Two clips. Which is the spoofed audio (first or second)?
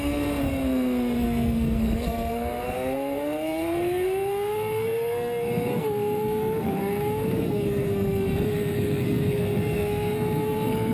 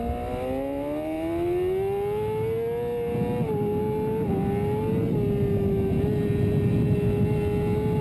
first